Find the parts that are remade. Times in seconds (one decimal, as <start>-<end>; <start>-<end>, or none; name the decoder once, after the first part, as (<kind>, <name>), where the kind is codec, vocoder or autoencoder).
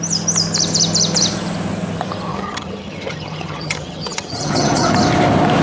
2.3-4.9 (vocoder, HiFi-GAN)